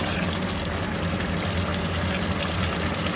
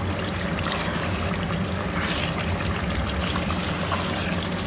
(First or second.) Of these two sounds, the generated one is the second